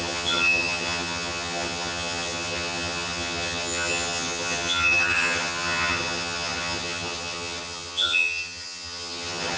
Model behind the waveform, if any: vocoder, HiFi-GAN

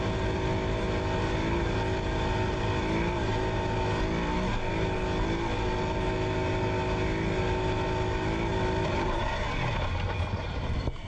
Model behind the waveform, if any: none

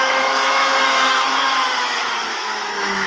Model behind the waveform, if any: autoencoder, DAC-VAE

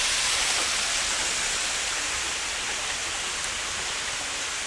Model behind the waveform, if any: none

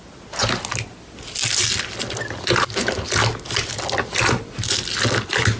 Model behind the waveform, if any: none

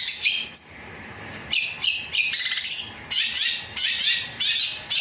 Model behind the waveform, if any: none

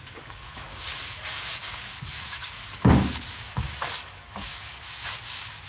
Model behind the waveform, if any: codec, DAC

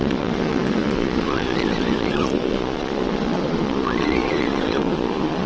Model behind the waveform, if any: vocoder, Vocos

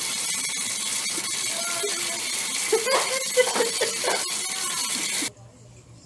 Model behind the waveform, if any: none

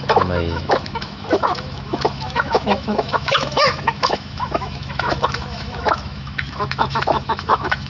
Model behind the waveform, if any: autoencoder, DAC-VAE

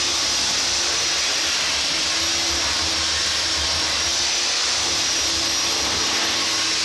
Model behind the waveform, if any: none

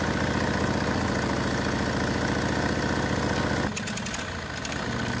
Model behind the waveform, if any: none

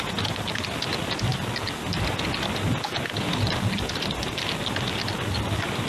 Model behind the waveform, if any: none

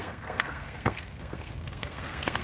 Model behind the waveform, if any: codec, SNAC